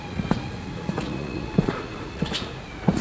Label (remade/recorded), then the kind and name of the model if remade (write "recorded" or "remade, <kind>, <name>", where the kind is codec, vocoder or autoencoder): remade, vocoder, Vocos